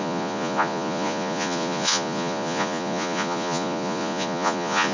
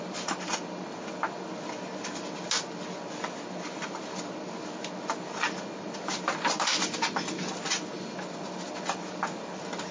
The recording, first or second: second